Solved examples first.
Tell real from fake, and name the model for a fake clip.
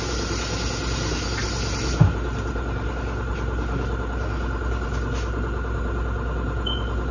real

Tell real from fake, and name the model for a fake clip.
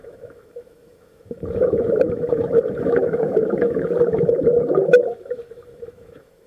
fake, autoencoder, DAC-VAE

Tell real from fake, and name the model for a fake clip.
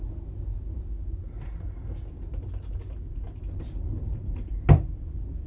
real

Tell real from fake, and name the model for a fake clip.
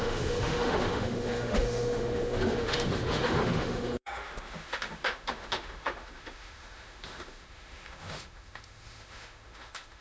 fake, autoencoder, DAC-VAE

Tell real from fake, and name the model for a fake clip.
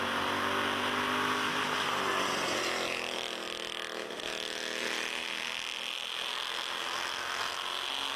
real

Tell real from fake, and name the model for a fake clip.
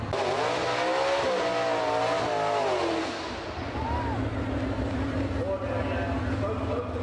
real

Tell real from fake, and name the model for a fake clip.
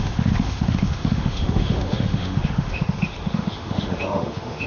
fake, autoencoder, DAC-VAE